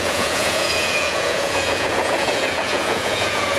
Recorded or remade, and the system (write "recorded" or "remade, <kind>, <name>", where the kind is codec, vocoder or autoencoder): remade, vocoder, Vocos